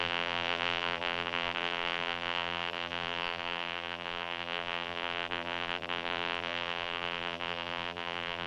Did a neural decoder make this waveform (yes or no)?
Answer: yes